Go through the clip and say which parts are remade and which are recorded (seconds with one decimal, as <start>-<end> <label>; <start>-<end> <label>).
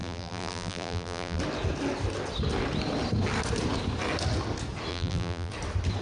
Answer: 0.0-1.4 remade; 1.4-4.9 recorded; 4.9-5.5 remade; 5.5-6.0 recorded